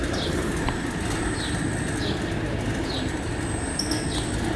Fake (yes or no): no